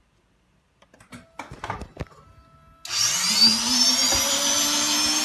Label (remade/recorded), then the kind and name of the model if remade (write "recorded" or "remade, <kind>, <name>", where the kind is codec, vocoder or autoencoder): recorded